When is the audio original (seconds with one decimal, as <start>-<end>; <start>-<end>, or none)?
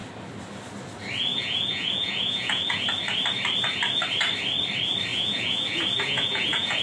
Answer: 0.0-1.3; 2.8-5.1